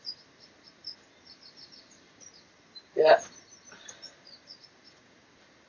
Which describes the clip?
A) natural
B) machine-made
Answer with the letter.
A